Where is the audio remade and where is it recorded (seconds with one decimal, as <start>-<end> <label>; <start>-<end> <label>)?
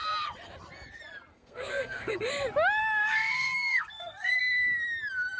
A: 0.0-1.3 recorded; 1.3-2.3 remade; 2.3-2.8 recorded; 2.8-4.4 remade; 4.4-5.4 recorded